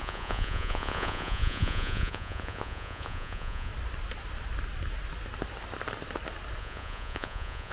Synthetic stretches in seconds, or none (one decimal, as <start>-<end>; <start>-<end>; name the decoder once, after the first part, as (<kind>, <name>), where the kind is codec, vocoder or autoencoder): 0.0-3.7 (vocoder, Vocos); 6.6-7.7